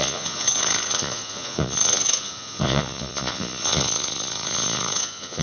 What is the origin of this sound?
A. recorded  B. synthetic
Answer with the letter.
B